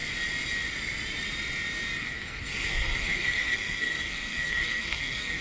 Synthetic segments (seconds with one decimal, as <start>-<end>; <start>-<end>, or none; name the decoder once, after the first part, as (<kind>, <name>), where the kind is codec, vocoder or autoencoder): 2.0-5.4 (codec, SNAC)